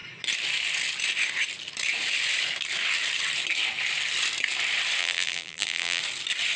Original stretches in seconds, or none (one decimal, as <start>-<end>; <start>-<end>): 0.0-5.0; 6.0-6.6

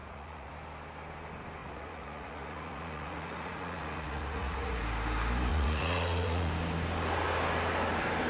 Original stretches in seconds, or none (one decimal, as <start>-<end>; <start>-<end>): 0.5-1.6; 4.8-5.5; 6.5-8.3

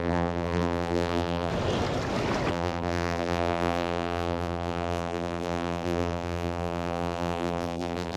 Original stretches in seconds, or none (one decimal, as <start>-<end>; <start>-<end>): 1.5-2.5

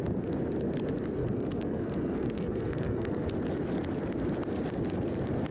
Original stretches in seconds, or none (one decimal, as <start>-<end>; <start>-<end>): 0.0-1.2; 3.2-5.5

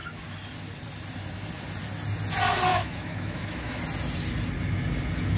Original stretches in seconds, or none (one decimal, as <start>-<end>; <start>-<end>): 0.0-2.7; 3.8-5.4